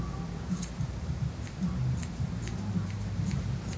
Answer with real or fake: fake